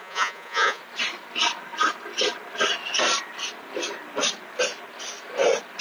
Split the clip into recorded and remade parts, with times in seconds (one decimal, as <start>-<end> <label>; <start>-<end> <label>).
0.0-0.8 remade; 0.8-5.8 recorded